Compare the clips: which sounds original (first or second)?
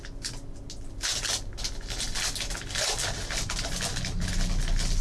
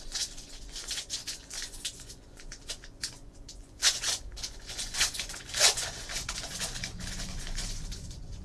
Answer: first